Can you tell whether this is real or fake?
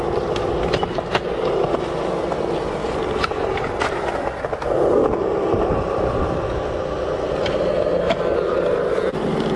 real